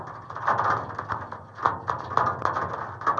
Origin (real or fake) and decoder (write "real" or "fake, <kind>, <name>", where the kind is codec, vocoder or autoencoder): real